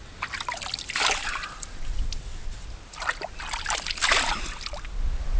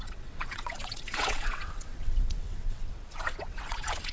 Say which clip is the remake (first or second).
second